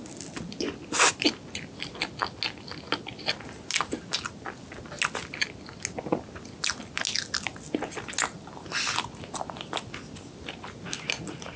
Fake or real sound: real